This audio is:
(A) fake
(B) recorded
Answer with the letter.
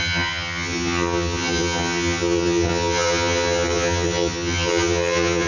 A